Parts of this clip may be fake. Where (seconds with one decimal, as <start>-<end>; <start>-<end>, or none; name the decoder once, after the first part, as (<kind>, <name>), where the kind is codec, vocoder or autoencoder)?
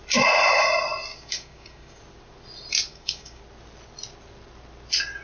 1.1-2.0 (codec, DAC); 2.9-3.4